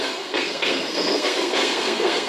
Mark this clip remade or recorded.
remade